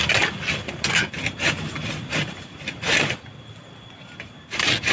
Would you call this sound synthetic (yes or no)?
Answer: no